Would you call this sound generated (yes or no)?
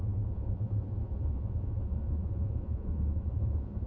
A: yes